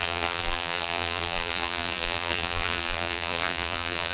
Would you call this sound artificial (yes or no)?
yes